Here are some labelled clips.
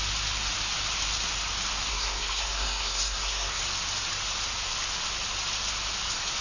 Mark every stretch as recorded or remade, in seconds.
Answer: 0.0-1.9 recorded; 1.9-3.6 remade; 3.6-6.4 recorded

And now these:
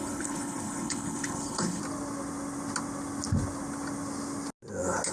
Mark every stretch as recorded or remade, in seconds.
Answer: 0.0-1.8 remade; 1.8-5.1 recorded